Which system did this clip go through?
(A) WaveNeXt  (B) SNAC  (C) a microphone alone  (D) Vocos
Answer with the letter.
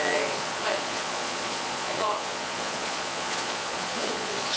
D